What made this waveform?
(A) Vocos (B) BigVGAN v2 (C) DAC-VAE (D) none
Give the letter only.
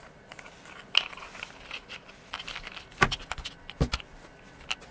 D